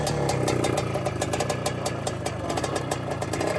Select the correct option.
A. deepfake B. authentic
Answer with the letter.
B